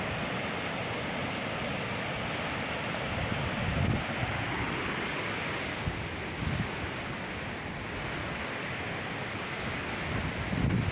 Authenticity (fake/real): real